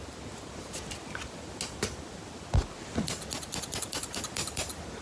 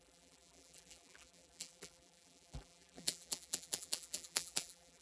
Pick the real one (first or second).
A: first